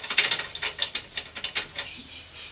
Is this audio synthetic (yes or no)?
no